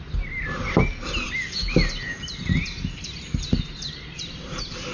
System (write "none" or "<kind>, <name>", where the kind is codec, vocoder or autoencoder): none